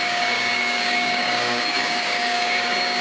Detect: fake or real fake